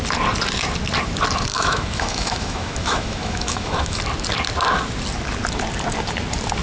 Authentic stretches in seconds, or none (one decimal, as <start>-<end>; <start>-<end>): 0.0-1.5; 4.0-6.6